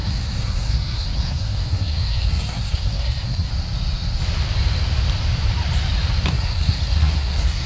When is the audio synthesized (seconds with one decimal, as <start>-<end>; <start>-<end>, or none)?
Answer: 0.0-3.5; 6.3-7.7